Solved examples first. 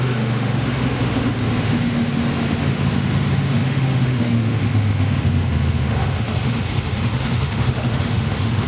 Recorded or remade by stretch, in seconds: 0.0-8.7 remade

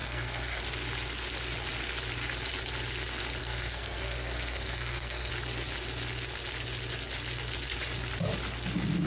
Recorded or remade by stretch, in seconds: 0.0-0.6 remade; 0.6-3.4 recorded; 3.4-5.3 remade; 5.3-9.1 recorded

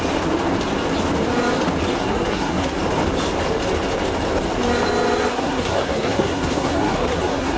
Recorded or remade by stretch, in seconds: 0.0-1.9 recorded; 1.9-2.8 remade; 2.8-5.3 recorded; 5.3-7.6 remade